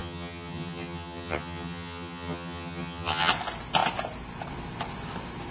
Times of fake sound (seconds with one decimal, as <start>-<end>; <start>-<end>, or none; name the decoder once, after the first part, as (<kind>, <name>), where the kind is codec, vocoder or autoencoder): 0.0-3.3 (vocoder, HiFi-GAN)